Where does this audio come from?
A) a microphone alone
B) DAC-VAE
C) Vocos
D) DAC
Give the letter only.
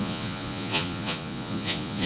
C